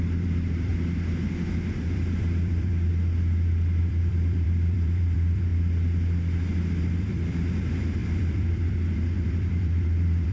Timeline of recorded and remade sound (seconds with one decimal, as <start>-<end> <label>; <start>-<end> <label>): 0.0-0.7 remade; 0.7-1.7 recorded; 1.7-2.9 remade; 2.9-3.8 recorded; 3.8-5.5 remade; 5.5-6.8 recorded; 6.8-10.3 remade